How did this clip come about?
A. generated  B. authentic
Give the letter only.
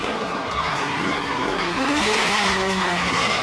A